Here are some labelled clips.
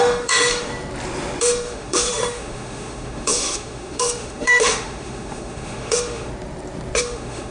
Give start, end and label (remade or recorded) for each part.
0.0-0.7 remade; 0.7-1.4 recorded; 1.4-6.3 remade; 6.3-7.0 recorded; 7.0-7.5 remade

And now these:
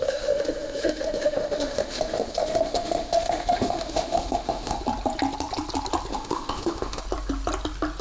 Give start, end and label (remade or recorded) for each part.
0.0-4.8 remade; 4.8-6.1 recorded; 6.1-7.0 remade; 7.0-8.0 recorded

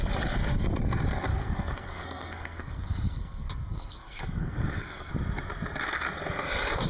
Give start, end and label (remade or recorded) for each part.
0.0-1.3 recorded; 1.3-5.1 remade; 5.1-6.9 recorded

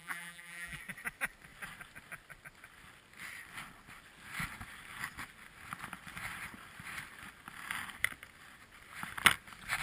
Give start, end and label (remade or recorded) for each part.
0.0-0.8 remade; 0.8-9.8 recorded

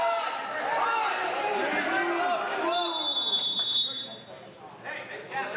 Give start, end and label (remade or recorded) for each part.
0.0-5.6 recorded

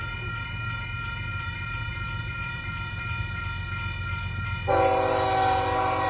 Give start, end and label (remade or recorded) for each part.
0.0-1.3 recorded; 1.3-2.9 remade; 2.9-6.1 recorded

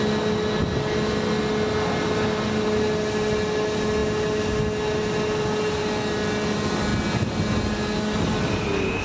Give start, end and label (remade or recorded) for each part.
0.0-9.0 recorded